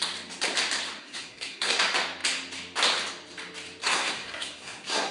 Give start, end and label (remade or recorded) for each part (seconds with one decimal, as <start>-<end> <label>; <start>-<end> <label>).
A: 0.0-1.0 recorded; 1.0-1.8 remade; 1.8-3.8 recorded; 3.8-5.1 remade